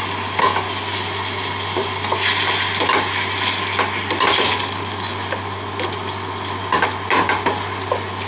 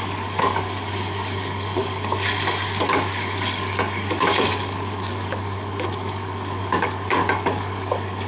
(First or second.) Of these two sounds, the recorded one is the first